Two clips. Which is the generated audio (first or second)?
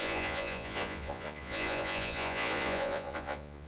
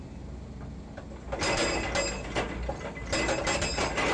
first